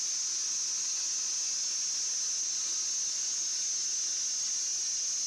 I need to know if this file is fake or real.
real